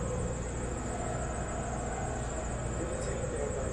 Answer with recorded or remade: recorded